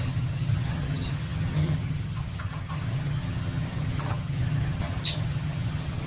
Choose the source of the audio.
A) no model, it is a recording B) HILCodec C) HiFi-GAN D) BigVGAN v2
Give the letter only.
C